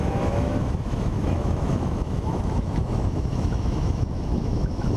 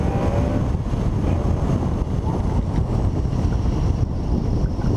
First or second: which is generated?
first